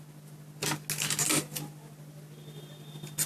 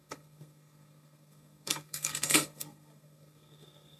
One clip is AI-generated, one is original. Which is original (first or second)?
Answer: first